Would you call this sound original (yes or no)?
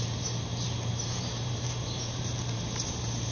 no